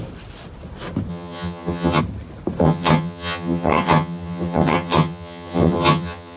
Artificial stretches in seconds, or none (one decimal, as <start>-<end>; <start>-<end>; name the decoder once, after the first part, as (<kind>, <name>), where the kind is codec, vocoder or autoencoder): 1.1-2.0 (vocoder, HiFi-GAN); 2.6-6.4